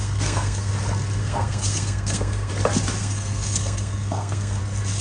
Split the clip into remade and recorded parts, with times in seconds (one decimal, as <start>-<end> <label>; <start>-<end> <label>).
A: 0.0-0.7 remade; 0.7-1.2 recorded; 1.2-2.5 remade; 2.5-3.0 recorded; 3.0-4.6 remade; 4.6-5.0 recorded